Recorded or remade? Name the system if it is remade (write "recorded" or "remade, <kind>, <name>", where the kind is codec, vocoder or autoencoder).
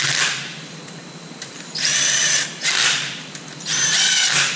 remade, vocoder, BigVGAN v2